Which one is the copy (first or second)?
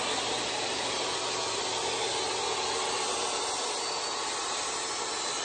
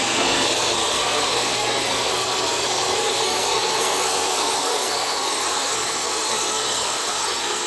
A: second